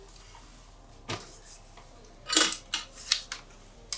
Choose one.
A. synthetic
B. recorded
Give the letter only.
B